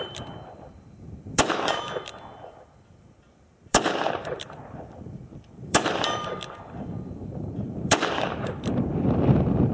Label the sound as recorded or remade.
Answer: remade